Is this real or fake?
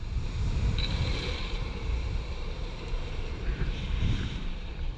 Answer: fake